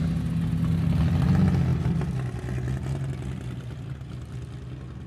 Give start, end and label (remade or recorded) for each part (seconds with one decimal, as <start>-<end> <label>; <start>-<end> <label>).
0.0-5.1 recorded